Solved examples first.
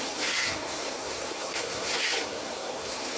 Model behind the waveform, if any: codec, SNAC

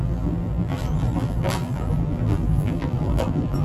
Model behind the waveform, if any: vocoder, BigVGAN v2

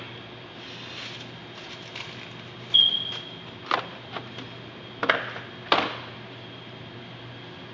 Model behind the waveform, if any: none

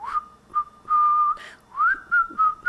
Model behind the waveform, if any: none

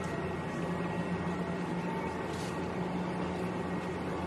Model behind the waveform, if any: none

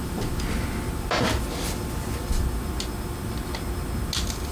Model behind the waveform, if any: none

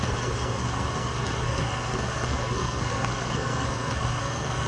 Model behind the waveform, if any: codec, SNAC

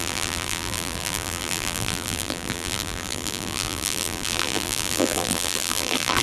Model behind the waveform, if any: vocoder, BigVGAN v2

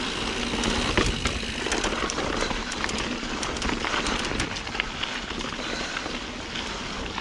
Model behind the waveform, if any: none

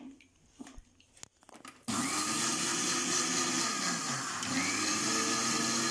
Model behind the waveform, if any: none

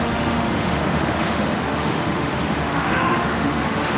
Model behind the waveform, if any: autoencoder, DAC-VAE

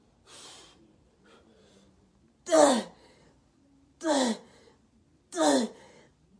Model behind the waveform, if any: vocoder, BigVGAN v2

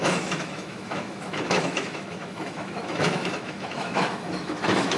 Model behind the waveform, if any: autoencoder, DAC-VAE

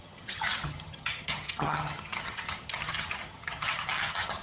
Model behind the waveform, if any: vocoder, HiFi-GAN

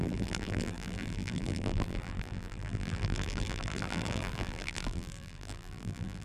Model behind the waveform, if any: vocoder, BigVGAN v2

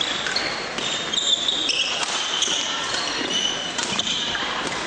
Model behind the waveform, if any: none